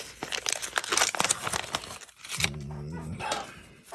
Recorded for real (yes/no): yes